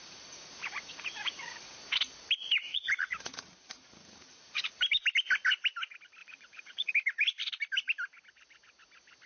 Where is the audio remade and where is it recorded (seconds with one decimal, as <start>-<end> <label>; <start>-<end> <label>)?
0.0-1.8 remade; 1.8-2.7 recorded; 2.7-4.7 remade; 4.7-6.2 recorded; 6.2-6.9 remade; 6.9-9.3 recorded